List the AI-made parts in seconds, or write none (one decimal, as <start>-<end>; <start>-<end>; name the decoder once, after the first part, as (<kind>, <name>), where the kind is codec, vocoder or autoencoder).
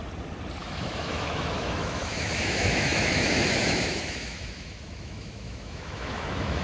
0.6-6.6 (autoencoder, DAC-VAE)